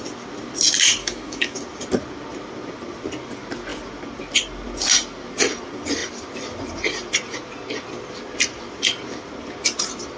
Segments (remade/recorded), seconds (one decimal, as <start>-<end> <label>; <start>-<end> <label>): 0.0-1.0 recorded; 1.0-1.6 remade; 1.6-10.2 recorded